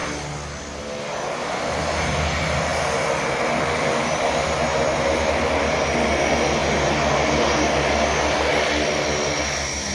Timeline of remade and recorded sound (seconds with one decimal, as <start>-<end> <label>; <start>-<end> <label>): 0.0-9.9 recorded